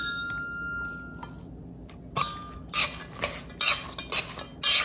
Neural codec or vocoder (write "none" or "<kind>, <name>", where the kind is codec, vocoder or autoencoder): none